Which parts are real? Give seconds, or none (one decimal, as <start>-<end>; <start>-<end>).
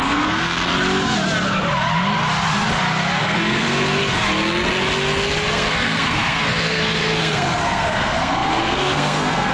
0.7-3.2; 4.0-5.5